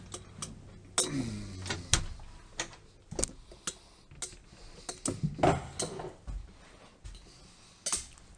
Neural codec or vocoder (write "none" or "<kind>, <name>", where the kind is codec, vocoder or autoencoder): none